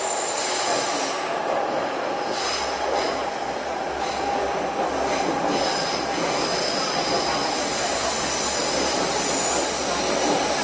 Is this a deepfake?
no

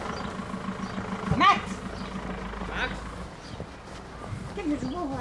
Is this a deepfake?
no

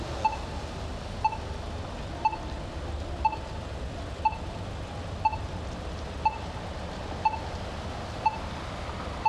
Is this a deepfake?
no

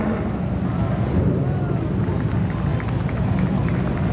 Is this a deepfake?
no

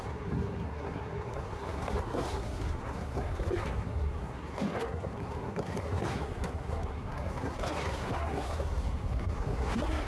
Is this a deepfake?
yes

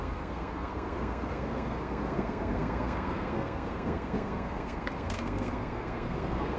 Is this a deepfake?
yes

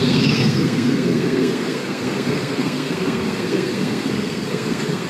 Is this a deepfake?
yes